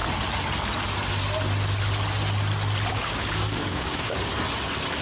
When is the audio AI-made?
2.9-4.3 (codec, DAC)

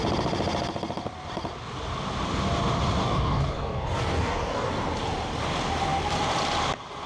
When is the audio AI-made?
3.0-4.7 (codec, DAC)

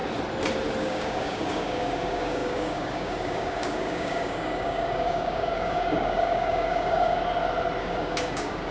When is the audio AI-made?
0.8-7.2 (codec, DAC); 7.8-8.7

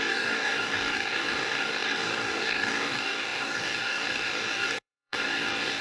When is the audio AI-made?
0.0-5.8 (codec, DAC)